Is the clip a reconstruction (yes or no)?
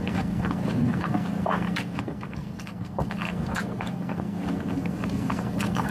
yes